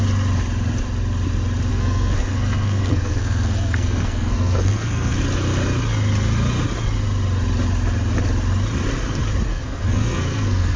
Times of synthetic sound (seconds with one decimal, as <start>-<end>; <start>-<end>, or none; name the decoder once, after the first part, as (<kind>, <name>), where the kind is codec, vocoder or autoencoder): 1.7-5.2 (codec, SNAC); 9.5-10.8